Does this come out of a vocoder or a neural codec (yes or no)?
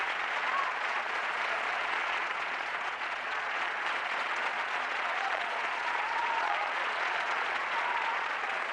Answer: yes